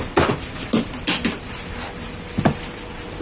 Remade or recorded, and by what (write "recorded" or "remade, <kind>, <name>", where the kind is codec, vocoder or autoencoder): recorded